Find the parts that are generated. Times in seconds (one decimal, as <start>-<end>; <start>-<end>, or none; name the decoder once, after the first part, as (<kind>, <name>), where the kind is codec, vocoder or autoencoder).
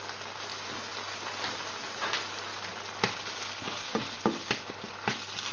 none